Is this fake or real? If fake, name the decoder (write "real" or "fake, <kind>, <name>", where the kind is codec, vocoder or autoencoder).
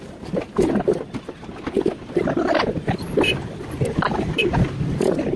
real